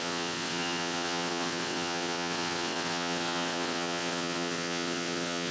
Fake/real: fake